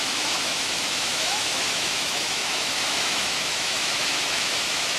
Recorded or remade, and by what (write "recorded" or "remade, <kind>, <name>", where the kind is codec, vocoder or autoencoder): remade, autoencoder, DAC-VAE